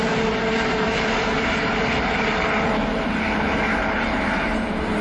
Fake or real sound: fake